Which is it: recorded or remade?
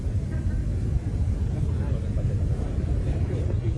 recorded